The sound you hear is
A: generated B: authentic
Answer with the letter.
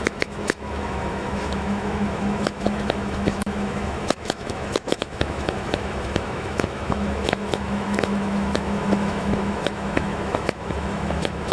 A